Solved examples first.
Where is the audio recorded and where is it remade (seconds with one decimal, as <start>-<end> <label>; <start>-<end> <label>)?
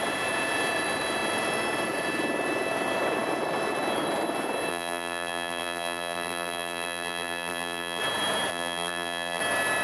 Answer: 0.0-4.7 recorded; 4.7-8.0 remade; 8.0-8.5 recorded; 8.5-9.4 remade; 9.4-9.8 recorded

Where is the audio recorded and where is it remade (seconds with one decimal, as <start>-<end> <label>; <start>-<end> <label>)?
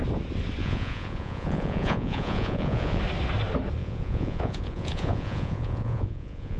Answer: 0.0-0.6 recorded; 0.6-3.0 remade; 3.0-3.8 recorded; 3.8-6.6 remade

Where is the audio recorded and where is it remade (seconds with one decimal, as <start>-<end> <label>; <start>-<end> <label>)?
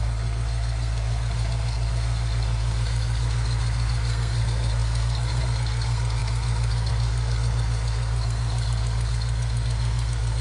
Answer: 0.0-10.4 remade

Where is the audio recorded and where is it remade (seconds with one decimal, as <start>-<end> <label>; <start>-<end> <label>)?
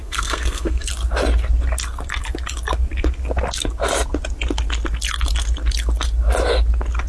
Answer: 0.0-0.9 remade; 0.9-7.1 recorded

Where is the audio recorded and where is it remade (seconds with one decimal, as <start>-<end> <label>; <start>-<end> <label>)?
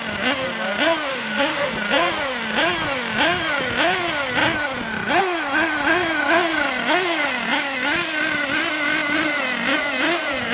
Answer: 0.0-1.1 recorded; 1.1-1.7 remade; 1.7-10.5 recorded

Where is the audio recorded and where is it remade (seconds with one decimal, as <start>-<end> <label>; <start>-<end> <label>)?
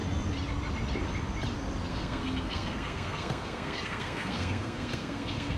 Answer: 0.0-1.9 recorded; 1.9-5.6 remade